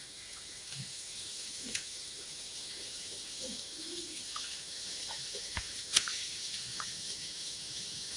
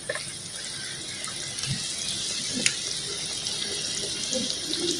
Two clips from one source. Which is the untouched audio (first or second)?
second